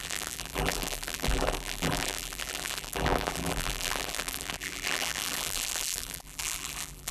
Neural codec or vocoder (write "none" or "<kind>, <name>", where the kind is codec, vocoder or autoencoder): vocoder, BigVGAN v2